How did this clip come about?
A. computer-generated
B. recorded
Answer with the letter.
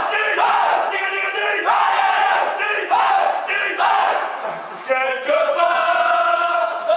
A